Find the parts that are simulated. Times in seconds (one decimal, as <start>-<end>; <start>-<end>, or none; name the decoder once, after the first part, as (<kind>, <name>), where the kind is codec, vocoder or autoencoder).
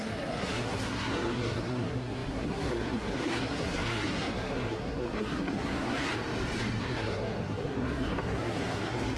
0.0-6.1 (codec, SNAC); 6.8-9.2